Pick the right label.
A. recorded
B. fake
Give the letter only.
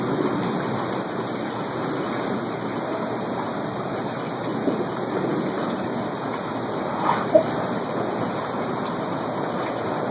B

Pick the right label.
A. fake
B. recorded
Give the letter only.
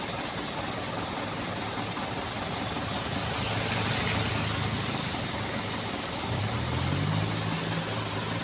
B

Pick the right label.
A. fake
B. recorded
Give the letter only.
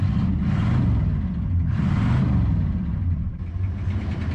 B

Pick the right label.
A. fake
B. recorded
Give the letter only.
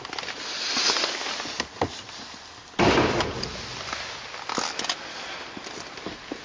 B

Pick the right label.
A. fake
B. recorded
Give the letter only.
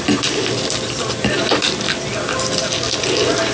B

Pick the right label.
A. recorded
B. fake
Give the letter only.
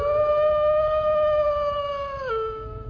A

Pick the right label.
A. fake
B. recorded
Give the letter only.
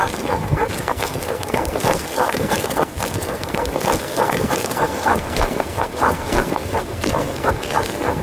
A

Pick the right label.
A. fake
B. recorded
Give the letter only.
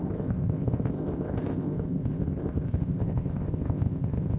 A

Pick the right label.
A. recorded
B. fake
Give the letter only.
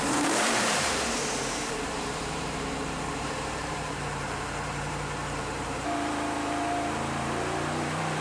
B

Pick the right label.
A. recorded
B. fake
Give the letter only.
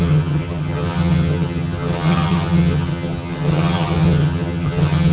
B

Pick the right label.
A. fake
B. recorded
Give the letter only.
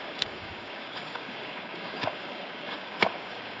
A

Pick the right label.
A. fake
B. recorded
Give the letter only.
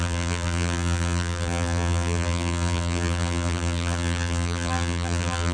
A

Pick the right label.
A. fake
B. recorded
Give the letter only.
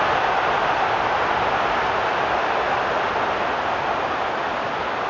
B